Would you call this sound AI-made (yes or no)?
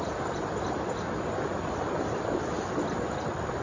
no